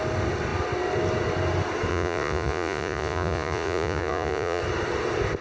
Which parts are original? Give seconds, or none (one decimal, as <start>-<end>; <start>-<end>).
0.0-1.9; 4.6-5.4

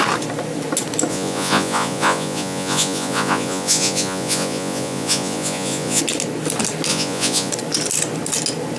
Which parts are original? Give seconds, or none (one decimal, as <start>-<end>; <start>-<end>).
0.0-1.1; 6.0-6.9; 7.5-8.8

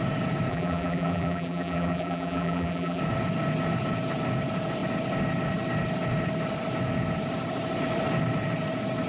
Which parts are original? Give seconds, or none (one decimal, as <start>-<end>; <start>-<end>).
0.0-0.5; 3.0-9.1

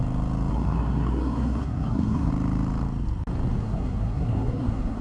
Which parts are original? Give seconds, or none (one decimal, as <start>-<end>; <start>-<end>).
0.0-0.5; 2.3-3.6

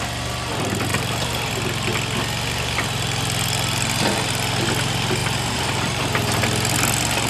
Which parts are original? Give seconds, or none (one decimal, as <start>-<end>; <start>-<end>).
0.0-0.9; 1.5-5.2; 6.4-7.3

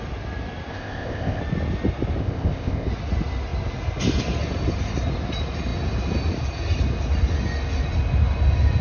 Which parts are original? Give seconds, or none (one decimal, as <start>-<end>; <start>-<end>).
0.0-0.7; 1.4-2.2; 2.9-8.8

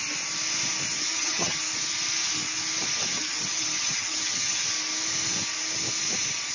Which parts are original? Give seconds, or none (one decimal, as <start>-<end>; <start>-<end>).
0.0-1.0; 1.6-3.1; 4.7-6.5